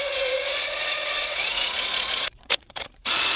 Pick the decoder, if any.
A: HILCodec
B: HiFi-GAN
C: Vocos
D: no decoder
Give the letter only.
C